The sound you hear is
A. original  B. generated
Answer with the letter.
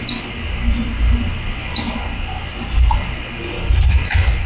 A